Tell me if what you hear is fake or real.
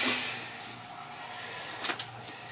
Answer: real